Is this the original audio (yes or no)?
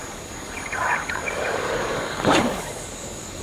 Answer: no